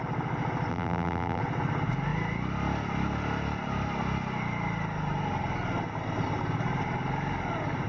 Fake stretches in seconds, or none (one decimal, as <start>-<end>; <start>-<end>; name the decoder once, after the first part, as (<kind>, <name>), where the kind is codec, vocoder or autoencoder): 0.7-1.4 (vocoder, BigVGAN v2)